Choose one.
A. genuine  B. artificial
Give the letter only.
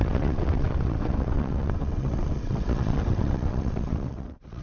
B